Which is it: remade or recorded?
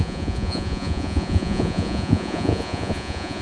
remade